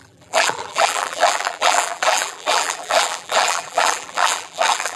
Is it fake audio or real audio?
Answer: fake